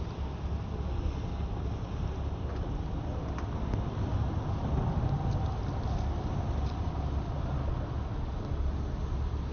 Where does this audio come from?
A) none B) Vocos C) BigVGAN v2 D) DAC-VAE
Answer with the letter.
A